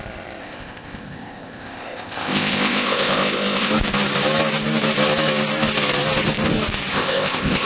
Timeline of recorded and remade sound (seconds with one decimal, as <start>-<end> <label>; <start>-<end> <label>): 0.0-0.4 recorded; 0.4-3.7 remade; 3.7-6.9 recorded; 6.9-7.7 remade